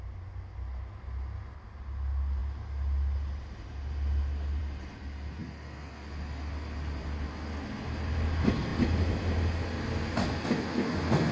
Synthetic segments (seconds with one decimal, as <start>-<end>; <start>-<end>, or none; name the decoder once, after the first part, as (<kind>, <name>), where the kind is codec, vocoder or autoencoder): none